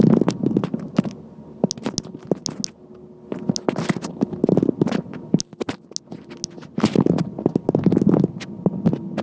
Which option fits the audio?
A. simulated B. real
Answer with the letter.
B